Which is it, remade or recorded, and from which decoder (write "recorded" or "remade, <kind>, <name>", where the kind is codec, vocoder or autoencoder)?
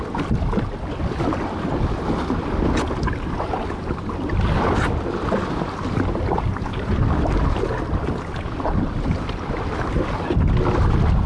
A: recorded